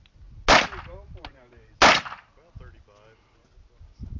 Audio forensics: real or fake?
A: real